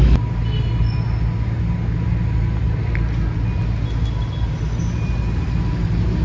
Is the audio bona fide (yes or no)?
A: yes